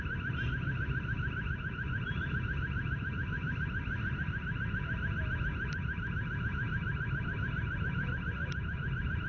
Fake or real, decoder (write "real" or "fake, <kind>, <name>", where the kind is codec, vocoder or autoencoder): fake, vocoder, BigVGAN v2